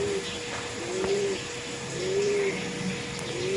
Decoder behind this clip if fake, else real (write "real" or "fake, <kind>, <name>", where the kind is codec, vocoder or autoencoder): real